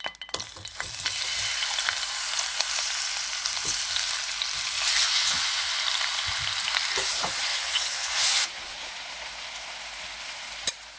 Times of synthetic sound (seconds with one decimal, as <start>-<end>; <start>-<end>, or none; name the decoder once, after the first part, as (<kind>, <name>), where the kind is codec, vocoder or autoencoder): 5.1-5.7 (vocoder, Vocos); 7.5-8.9